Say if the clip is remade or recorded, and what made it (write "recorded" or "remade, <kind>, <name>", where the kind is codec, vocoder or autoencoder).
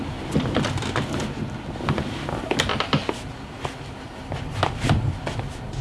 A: recorded